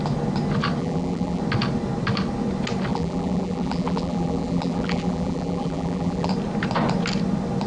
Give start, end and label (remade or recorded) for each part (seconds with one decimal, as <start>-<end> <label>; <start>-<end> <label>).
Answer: 0.0-0.8 recorded; 0.8-1.4 remade; 1.4-2.9 recorded; 2.9-6.3 remade; 6.3-7.7 recorded